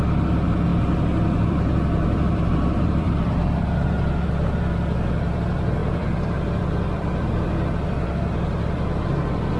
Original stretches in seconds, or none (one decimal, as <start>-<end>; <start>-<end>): 0.0-0.7; 3.6-5.8; 9.0-9.6